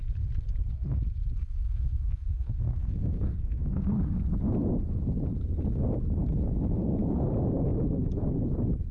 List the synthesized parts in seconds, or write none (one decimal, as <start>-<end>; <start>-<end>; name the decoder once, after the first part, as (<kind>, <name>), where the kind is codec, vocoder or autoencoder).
1.4-3.8 (codec, SNAC)